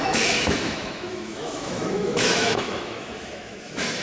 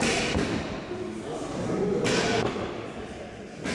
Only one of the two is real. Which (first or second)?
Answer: second